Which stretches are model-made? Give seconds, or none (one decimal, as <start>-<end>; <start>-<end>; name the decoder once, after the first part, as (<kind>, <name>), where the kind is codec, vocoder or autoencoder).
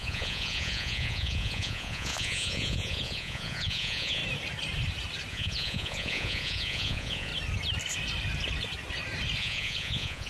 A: 0.0-4.2 (vocoder, Vocos); 5.3-7.3; 9.4-10.3